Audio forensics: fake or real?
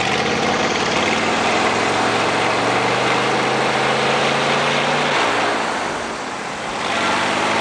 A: real